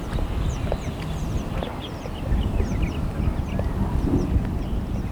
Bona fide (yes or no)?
yes